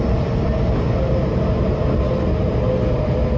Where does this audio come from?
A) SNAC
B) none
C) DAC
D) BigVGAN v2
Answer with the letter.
B